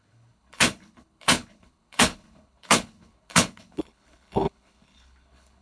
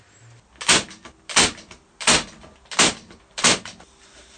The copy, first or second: first